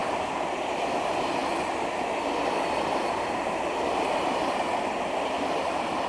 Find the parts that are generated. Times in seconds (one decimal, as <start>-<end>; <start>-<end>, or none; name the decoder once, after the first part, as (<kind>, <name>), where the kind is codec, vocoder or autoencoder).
0.6-1.4 (vocoder, BigVGAN v2); 5.1-6.1